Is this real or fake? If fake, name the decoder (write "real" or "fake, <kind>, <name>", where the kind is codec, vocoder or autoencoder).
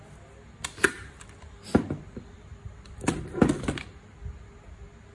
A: real